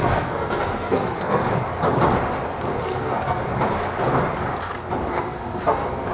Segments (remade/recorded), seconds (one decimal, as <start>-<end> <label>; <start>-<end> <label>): 0.0-1.4 remade; 1.4-2.8 recorded; 2.8-3.4 remade; 3.4-5.1 recorded; 5.1-6.1 remade